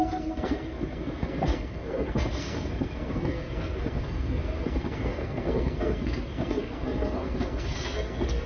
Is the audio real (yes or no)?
no